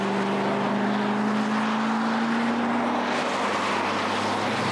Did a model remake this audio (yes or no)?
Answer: no